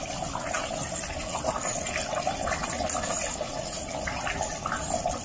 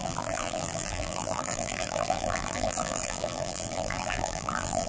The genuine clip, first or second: first